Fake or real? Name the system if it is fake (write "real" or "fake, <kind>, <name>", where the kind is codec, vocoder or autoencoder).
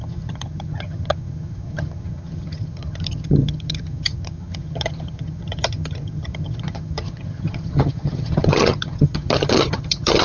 fake, vocoder, HiFi-GAN